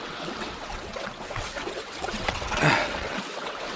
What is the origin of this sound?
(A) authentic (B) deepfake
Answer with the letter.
B